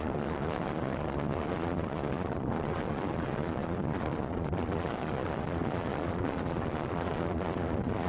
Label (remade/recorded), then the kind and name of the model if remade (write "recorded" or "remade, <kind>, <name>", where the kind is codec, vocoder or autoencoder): remade, vocoder, Vocos